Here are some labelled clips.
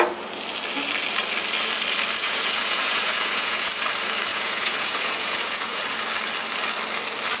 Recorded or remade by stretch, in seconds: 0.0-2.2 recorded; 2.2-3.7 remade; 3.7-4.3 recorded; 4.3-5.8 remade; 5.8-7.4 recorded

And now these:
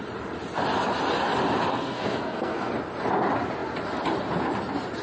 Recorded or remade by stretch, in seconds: 0.0-1.7 recorded; 1.7-2.7 remade; 2.7-5.0 recorded

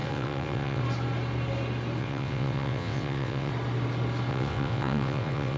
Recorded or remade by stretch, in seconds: 0.0-0.8 remade; 0.8-2.0 recorded; 2.0-3.5 remade; 3.5-4.3 recorded; 4.3-5.6 remade

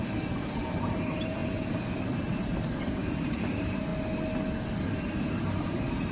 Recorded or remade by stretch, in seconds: 0.0-3.9 remade; 3.9-5.1 recorded; 5.1-6.1 remade

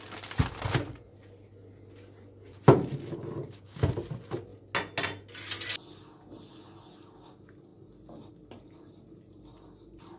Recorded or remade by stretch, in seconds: 0.0-3.4 recorded; 3.4-3.9 remade; 3.9-10.2 recorded